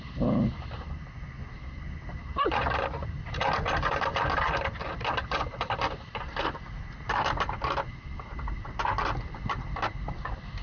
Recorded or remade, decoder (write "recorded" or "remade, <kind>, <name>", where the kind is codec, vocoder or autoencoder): recorded